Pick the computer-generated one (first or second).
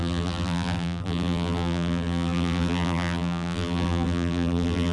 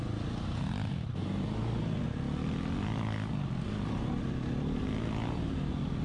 first